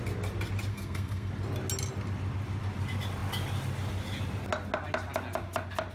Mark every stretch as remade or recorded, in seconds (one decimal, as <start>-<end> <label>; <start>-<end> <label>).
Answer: 0.0-0.7 recorded; 0.7-1.3 remade; 1.3-5.9 recorded